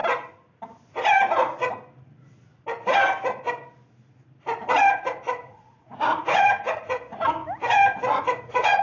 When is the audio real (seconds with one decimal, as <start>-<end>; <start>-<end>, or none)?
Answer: 0.0-4.9; 7.4-8.2

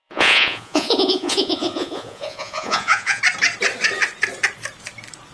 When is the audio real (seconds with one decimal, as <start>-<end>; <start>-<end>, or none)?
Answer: 3.2-5.3